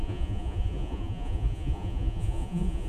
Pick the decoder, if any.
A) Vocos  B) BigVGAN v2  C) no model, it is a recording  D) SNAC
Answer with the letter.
A